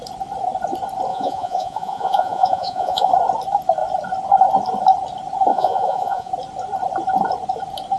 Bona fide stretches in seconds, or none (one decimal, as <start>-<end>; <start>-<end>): 0.0-1.1; 3.1-5.5; 6.3-8.0